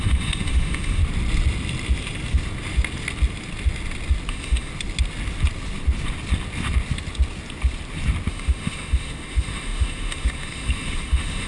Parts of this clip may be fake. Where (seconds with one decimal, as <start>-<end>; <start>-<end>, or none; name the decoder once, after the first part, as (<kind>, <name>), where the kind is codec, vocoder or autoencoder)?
0.0-1.0 (autoencoder, DAC-VAE); 4.3-4.7; 8.3-11.5